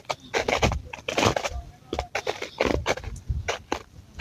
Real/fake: real